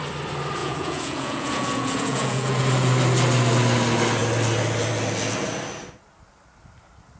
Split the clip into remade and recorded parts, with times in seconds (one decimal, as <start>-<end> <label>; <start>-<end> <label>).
0.0-0.6 recorded; 0.6-2.6 remade; 2.6-7.2 recorded